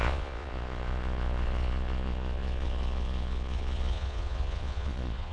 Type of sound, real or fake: fake